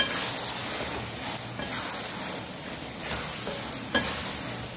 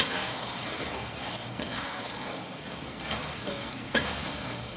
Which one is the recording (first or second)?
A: first